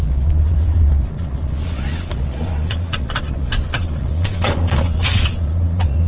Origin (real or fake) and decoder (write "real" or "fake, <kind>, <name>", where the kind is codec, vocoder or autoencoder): fake, vocoder, Vocos